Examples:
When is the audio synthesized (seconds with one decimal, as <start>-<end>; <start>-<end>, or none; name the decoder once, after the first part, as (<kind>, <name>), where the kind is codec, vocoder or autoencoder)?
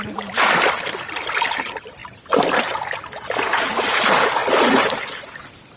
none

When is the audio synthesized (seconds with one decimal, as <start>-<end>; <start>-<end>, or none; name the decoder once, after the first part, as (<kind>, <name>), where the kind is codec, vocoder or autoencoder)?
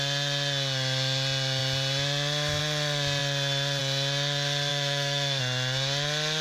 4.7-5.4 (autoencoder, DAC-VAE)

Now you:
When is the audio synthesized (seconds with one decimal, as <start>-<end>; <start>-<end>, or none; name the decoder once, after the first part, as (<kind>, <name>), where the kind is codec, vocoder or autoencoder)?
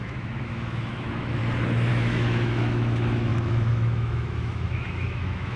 0.0-1.4 (autoencoder, DAC-VAE); 1.9-5.6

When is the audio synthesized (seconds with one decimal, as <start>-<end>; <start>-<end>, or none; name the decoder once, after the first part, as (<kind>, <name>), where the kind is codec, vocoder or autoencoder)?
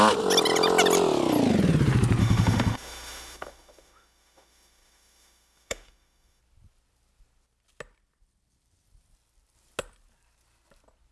2.2-6.4 (autoencoder, DAC-VAE)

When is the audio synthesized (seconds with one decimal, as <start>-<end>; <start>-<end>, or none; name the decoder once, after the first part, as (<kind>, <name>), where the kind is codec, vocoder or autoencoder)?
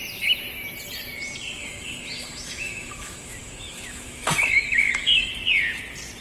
1.6-5.3 (autoencoder, DAC-VAE)